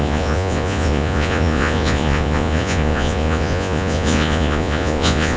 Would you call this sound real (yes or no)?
no